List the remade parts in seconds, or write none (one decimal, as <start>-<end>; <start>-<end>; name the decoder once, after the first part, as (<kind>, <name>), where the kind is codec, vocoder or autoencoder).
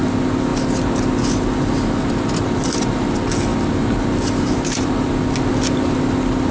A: none